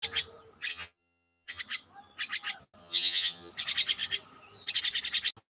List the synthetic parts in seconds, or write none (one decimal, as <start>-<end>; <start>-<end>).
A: 0.7-1.6; 2.8-3.5